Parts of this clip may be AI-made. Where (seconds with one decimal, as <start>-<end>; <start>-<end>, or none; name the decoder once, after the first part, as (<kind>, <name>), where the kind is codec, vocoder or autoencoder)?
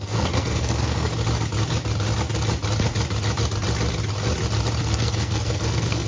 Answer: 0.0-1.1 (codec, SNAC); 4.8-6.1